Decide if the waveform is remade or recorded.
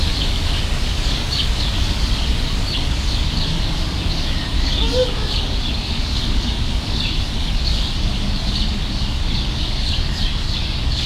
remade